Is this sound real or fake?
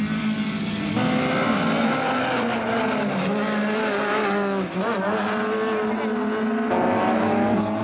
real